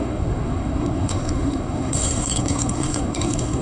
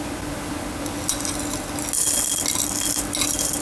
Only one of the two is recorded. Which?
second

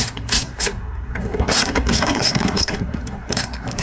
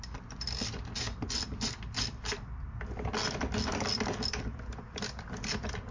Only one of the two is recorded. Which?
second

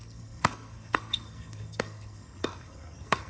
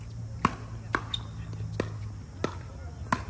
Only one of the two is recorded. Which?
second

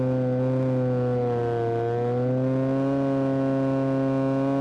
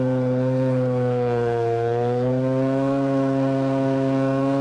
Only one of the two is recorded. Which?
first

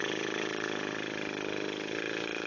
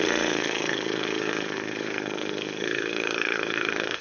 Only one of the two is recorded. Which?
first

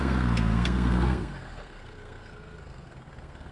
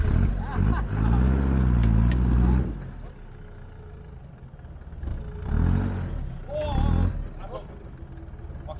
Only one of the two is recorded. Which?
second